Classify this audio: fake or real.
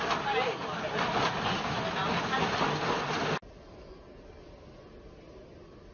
real